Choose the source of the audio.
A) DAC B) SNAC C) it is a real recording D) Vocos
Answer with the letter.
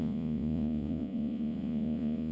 D